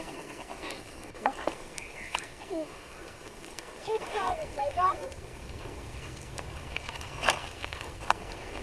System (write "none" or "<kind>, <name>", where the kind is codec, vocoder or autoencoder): codec, SNAC